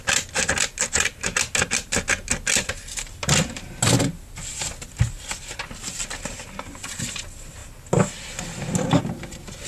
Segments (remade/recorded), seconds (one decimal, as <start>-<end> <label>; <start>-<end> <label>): 0.0-9.7 recorded